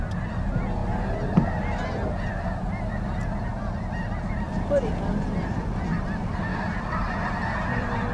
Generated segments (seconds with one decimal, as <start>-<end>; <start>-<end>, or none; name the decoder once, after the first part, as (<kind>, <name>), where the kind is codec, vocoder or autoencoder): none